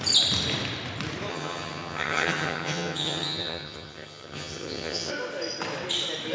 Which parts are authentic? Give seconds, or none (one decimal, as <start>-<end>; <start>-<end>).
0.0-1.3; 5.1-6.3

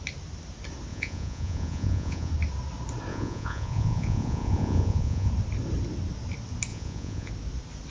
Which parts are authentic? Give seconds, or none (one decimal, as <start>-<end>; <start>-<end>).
0.0-0.9; 2.3-3.1; 5.3-6.7; 7.3-7.9

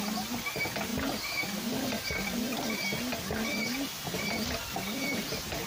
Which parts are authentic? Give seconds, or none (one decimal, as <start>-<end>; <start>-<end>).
0.0-5.7

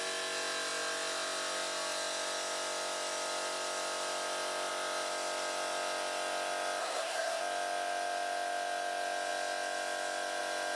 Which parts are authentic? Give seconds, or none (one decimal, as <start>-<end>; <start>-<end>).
0.0-6.8; 7.4-10.8

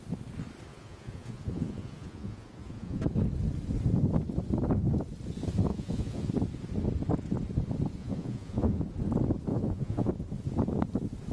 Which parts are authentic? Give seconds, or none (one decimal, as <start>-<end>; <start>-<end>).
0.0-0.7; 3.0-5.7; 6.3-8.0; 8.8-9.5; 10.1-11.3

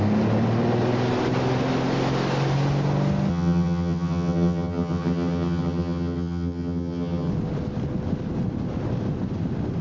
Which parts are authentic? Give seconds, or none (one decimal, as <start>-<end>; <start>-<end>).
0.0-3.3; 7.3-9.8